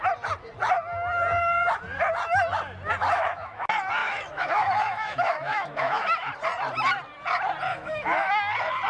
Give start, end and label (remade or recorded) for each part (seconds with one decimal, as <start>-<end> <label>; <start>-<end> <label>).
0.0-3.0 recorded; 3.0-3.6 remade; 3.6-4.0 recorded; 4.0-6.3 remade; 6.3-7.7 recorded; 7.7-8.3 remade; 8.3-8.9 recorded